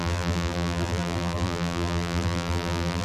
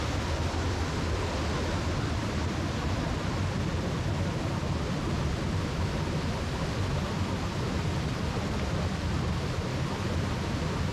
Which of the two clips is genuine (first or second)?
second